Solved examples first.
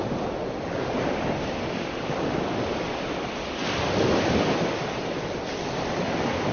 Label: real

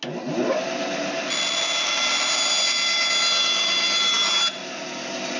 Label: real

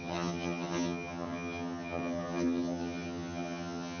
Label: fake